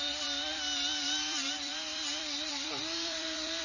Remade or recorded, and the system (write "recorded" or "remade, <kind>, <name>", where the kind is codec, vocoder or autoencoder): remade, vocoder, BigVGAN v2